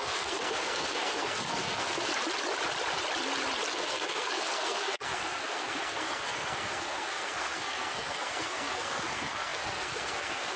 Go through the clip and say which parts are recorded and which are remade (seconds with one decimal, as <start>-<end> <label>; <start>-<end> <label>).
0.0-2.1 remade; 2.1-3.7 recorded; 3.7-10.6 remade